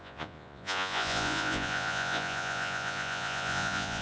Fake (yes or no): yes